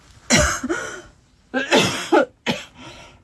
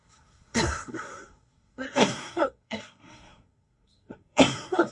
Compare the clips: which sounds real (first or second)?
first